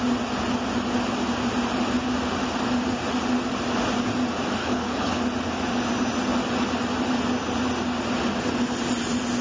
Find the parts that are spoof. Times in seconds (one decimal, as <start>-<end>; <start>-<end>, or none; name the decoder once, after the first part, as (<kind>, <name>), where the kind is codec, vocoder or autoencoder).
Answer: 4.6-5.2 (codec, HILCodec)